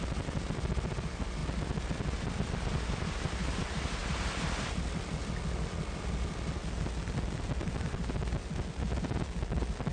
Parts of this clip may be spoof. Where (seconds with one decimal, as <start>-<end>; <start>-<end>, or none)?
none